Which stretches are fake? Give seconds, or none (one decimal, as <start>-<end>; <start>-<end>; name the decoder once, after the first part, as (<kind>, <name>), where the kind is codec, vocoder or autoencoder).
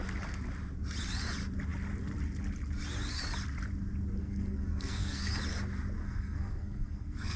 4.2-5.3 (codec, SNAC); 6.0-7.4